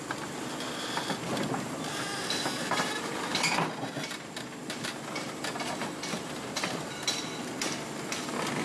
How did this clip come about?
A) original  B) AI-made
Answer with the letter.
B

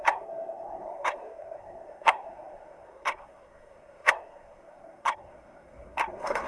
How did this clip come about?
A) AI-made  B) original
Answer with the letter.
A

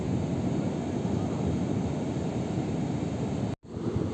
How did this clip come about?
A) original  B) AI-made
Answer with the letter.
A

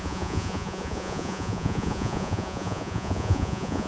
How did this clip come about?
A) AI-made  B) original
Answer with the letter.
A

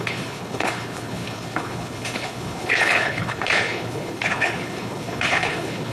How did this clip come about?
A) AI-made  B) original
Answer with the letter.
A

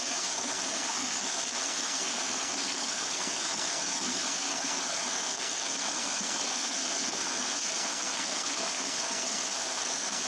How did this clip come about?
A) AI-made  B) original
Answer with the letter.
A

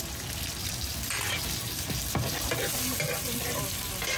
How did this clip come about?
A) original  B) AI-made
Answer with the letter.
A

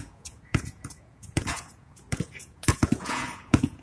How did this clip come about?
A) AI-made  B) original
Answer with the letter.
A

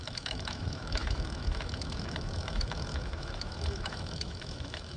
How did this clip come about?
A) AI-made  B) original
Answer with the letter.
A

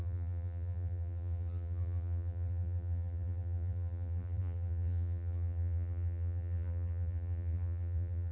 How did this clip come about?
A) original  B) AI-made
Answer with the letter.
B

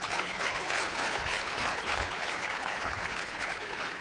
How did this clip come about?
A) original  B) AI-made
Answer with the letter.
B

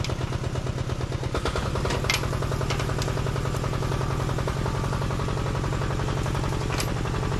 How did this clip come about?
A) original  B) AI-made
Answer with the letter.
A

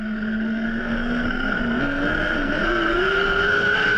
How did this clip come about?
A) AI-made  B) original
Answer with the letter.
A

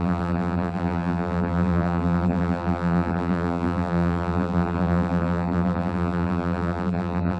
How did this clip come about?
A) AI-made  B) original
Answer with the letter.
A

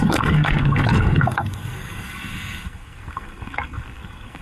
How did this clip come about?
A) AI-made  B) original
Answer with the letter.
A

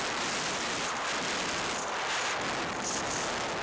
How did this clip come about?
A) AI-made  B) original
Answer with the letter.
B